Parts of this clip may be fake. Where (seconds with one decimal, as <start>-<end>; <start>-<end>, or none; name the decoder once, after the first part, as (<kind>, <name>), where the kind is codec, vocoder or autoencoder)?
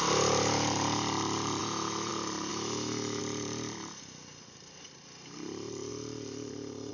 1.6-2.1 (autoencoder, DAC-VAE); 2.5-3.2